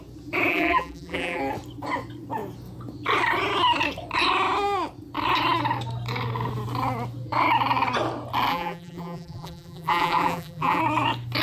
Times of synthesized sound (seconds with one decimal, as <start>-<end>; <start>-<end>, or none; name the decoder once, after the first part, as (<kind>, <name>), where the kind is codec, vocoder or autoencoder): 0.5-1.4 (vocoder, BigVGAN v2); 8.5-10.8